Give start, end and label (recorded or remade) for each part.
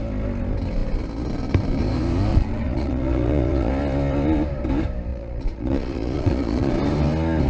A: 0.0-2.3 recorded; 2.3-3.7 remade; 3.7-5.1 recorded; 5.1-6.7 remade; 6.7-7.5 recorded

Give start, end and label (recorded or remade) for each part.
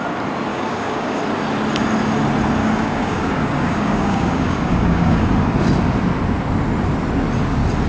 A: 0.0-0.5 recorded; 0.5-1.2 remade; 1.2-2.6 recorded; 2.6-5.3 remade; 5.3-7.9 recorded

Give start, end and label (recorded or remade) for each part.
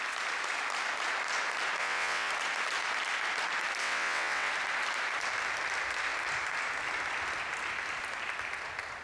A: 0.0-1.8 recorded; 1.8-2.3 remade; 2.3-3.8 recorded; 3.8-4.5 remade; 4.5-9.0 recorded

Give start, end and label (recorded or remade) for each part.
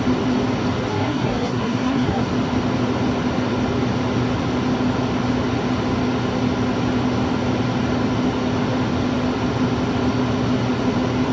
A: 0.0-0.9 recorded; 0.9-2.2 remade; 2.2-11.3 recorded